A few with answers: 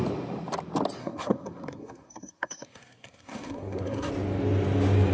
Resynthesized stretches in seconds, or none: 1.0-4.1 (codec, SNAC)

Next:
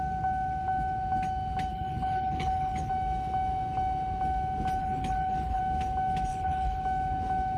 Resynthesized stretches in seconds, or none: 1.7-2.9 (codec, HILCodec); 4.8-5.6; 6.3-6.8

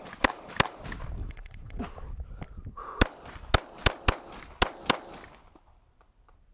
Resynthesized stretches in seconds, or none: 1.2-1.8 (vocoder, WaveNeXt)

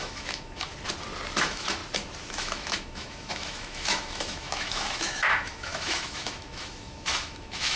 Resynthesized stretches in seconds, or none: 0.0-0.7 (autoencoder, DAC-VAE); 1.4-1.8; 2.3-7.8

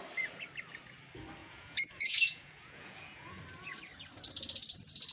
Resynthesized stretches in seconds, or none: 1.4-3.4 (vocoder, Vocos)

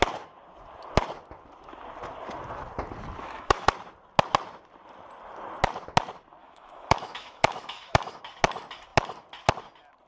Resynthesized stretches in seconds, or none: 3.2-3.7 (autoencoder, DAC-VAE); 6.4-8.2

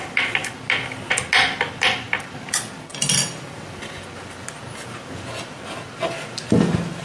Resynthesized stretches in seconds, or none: none

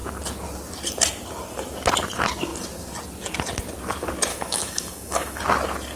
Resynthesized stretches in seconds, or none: 4.3-5.4 (autoencoder, DAC-VAE)